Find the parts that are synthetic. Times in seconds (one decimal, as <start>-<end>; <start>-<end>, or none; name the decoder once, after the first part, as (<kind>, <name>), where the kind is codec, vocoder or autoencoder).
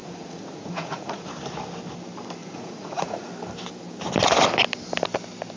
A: 0.0-1.3 (vocoder, Vocos); 2.4-3.3